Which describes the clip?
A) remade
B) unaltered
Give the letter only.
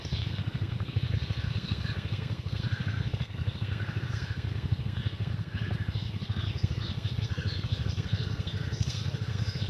A